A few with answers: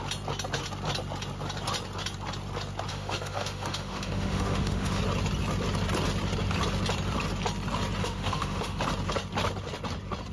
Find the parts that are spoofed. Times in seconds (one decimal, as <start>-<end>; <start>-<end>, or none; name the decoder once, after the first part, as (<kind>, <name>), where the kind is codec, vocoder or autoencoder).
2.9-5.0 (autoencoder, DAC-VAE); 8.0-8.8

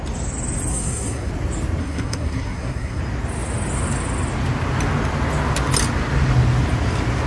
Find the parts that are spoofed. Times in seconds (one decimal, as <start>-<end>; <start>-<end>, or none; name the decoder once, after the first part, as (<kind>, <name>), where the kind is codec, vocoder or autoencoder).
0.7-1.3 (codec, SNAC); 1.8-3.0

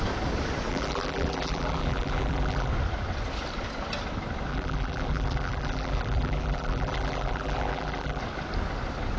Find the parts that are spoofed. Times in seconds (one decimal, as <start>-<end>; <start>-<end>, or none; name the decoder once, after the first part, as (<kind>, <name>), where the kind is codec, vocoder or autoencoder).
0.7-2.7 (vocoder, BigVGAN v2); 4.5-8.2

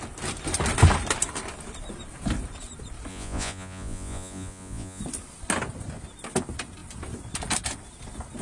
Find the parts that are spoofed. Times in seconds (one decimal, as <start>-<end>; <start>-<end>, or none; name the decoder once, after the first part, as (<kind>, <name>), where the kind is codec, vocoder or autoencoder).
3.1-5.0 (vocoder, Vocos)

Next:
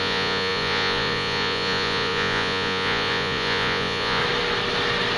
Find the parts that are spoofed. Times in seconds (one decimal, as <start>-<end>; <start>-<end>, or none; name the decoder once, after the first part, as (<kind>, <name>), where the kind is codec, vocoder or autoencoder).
0.0-4.2 (vocoder, Vocos)